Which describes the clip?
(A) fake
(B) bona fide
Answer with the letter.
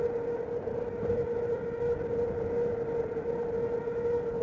B